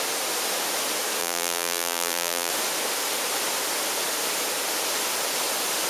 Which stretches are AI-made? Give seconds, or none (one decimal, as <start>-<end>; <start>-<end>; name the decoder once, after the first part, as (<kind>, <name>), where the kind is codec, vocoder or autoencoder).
1.2-2.5 (vocoder, BigVGAN v2)